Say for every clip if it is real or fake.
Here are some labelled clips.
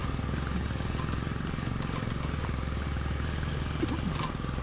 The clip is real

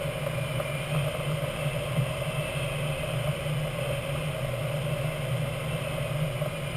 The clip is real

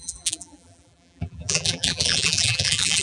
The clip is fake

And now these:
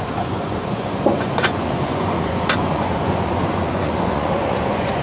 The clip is fake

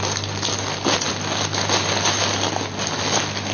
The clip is real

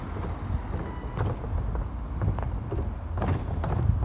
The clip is real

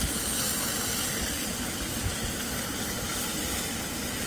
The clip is real